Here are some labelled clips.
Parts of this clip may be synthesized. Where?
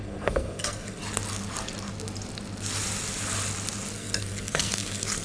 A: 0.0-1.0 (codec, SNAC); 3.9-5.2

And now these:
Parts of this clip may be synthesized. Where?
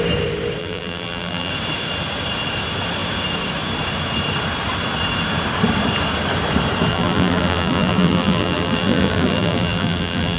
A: 0.6-1.5 (vocoder, BigVGAN v2); 6.9-10.4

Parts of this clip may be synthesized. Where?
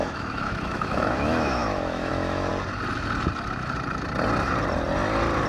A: 0.0-2.5 (autoencoder, DAC-VAE)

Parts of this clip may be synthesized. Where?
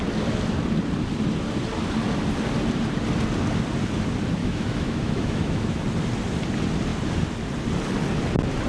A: 4.4-5.8 (autoencoder, DAC-VAE)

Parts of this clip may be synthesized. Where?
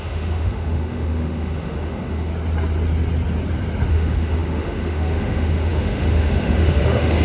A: 0.0-2.3 (autoencoder, DAC-VAE); 3.9-7.2